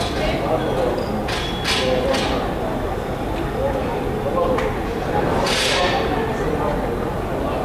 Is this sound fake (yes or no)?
no